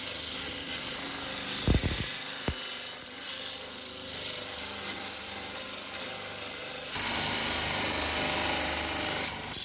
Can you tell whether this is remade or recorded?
recorded